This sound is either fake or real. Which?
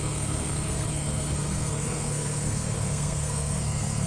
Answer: fake